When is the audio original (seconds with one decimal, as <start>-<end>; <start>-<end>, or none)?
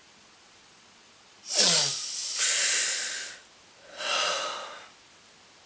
1.8-5.7